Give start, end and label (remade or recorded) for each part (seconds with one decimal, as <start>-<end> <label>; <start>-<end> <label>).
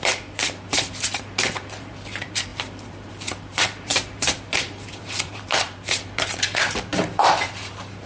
0.0-8.1 remade